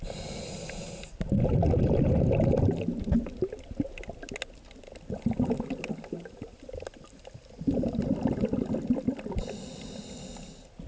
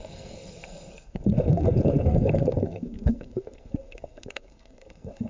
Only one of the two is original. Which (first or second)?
first